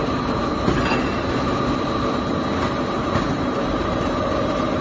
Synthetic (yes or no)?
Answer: no